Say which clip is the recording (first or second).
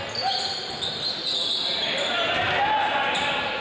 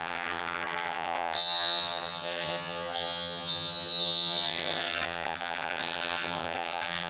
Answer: first